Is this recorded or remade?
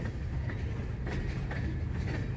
recorded